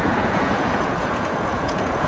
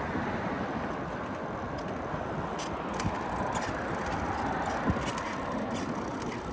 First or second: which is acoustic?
second